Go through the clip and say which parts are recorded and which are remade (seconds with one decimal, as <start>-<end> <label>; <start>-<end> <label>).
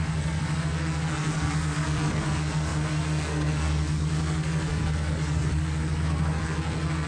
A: 0.0-7.1 remade